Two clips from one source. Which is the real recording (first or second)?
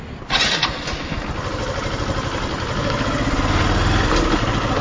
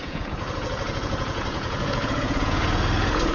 first